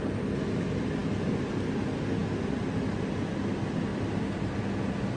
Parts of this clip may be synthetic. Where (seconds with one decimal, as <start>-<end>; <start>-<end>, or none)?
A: none